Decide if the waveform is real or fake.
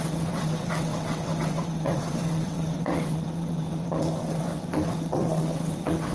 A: fake